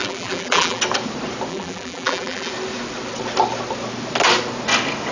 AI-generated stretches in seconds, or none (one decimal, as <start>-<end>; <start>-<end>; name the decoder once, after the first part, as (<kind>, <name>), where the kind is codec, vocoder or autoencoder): 0.0-0.8 (vocoder, BigVGAN v2); 1.5-2.5